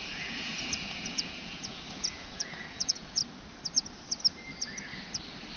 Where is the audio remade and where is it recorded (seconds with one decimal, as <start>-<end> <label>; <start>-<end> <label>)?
0.0-3.2 remade; 3.2-5.6 recorded